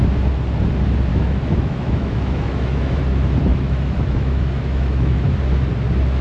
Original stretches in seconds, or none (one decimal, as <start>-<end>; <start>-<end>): 0.0-1.1; 3.0-3.5; 5.3-6.2